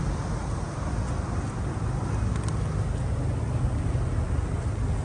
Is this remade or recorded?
recorded